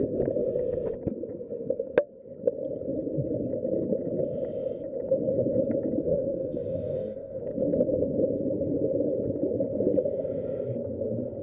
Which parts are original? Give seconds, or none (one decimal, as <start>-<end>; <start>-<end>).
0.0-6.0; 7.4-11.4